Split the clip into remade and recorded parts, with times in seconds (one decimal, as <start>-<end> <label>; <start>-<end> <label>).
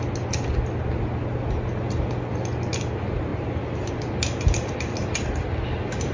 0.0-6.1 recorded